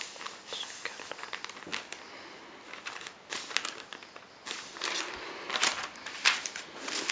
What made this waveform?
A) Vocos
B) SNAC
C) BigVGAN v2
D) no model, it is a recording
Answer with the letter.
D